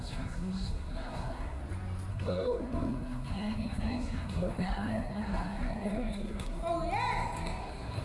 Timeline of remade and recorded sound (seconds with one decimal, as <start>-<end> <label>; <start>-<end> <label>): 0.0-1.6 remade; 1.6-2.1 recorded; 2.1-6.6 remade; 6.6-7.6 recorded; 7.6-8.0 remade